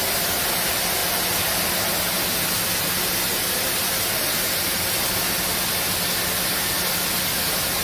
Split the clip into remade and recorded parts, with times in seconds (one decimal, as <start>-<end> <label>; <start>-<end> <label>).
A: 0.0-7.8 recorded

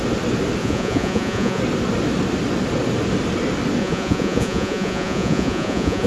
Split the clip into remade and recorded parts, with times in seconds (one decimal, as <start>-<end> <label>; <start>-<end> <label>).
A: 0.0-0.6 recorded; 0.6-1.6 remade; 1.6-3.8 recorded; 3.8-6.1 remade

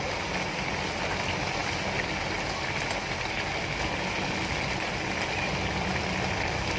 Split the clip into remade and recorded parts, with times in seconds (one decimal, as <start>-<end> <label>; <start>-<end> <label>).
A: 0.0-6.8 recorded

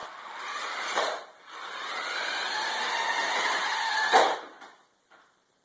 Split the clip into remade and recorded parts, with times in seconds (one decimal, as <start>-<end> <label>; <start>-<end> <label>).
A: 0.0-5.6 recorded